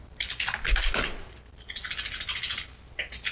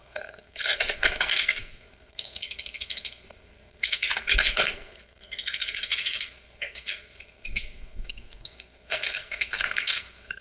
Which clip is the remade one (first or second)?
second